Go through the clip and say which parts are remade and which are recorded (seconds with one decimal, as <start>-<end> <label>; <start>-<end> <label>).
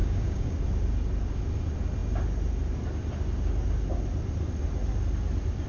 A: 0.0-0.6 remade; 0.6-5.7 recorded